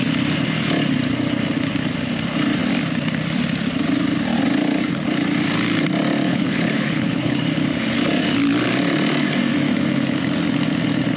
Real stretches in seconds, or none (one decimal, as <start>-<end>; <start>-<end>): 0.0-6.3; 7.4-11.2